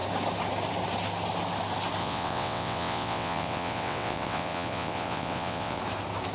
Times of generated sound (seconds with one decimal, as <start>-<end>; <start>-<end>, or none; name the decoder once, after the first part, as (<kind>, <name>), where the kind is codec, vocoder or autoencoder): 2.0-5.8 (vocoder, WaveNeXt)